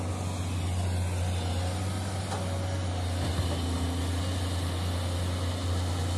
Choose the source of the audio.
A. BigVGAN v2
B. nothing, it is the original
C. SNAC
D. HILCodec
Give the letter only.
B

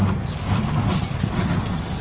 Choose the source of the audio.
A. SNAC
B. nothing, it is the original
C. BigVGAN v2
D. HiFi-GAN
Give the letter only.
B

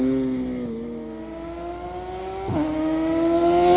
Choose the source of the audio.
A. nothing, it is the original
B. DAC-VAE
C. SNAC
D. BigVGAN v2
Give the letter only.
A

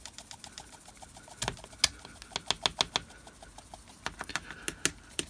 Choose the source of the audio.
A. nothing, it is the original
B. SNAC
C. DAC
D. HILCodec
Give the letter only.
A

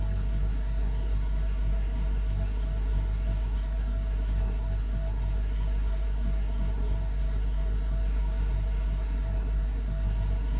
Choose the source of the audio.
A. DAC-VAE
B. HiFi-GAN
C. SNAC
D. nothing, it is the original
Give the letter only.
C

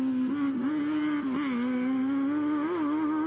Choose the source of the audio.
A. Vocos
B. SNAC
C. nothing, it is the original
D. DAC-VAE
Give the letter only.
C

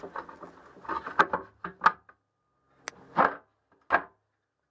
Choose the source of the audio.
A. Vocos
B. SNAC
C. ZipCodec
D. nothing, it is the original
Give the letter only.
D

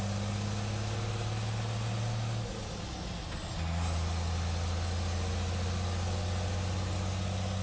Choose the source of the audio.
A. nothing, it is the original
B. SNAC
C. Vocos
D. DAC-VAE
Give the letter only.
A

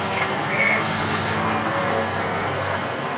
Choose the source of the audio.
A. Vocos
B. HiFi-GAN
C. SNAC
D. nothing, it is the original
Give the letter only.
C